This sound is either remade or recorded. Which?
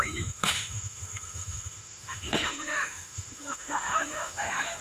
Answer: remade